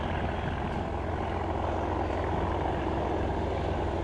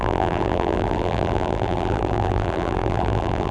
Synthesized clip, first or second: second